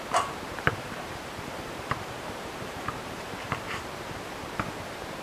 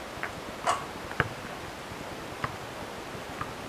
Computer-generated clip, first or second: first